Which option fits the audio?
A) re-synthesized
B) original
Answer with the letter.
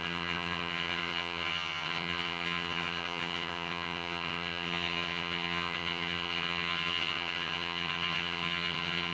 A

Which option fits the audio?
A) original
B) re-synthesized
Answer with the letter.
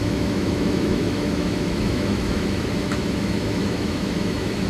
B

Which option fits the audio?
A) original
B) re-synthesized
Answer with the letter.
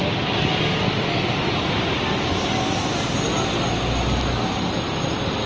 A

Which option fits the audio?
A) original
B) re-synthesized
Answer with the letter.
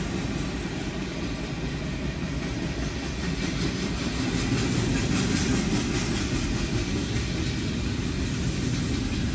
A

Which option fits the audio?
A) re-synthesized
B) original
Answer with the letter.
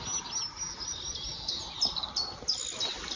B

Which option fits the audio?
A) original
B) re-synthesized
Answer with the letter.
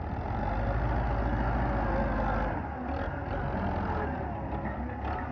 A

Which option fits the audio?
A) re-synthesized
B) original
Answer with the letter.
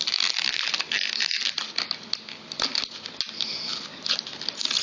B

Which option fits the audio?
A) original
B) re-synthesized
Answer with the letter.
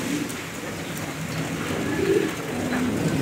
A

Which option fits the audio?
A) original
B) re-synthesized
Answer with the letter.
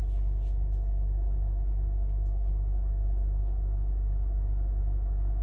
A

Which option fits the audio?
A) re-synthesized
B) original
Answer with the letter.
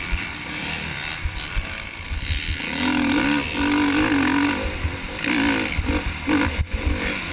B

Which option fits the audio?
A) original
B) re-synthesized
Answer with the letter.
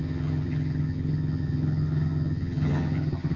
B